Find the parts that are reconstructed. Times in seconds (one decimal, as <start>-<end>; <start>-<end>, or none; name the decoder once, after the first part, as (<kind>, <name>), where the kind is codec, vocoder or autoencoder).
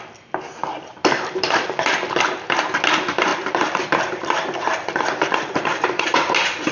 1.0-2.2 (vocoder, BigVGAN v2); 3.3-6.0